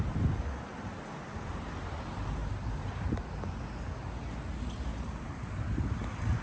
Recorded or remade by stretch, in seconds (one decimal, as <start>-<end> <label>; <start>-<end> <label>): 0.0-0.7 recorded; 0.7-2.0 remade; 2.0-2.4 recorded; 2.4-3.3 remade; 3.3-4.9 recorded; 4.9-5.5 remade; 5.5-6.4 recorded